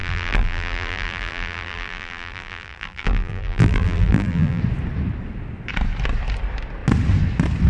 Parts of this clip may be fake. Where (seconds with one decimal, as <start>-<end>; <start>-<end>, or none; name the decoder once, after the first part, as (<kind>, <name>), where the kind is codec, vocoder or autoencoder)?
0.0-4.6 (vocoder, BigVGAN v2)